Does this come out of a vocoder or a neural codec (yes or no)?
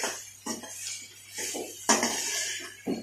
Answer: no